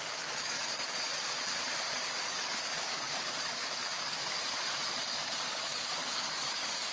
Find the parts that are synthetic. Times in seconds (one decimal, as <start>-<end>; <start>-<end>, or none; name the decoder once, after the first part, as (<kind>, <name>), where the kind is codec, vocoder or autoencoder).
0.0-1.1 (codec, DAC); 1.8-4.2; 5.0-6.9